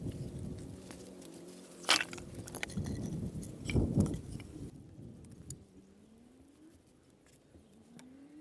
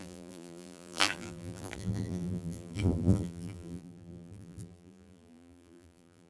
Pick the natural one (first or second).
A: first